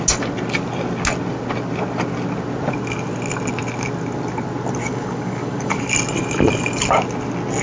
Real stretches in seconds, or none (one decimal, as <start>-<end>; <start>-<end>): 0.0-4.8; 5.9-7.6